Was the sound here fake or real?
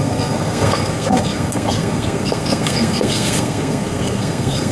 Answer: fake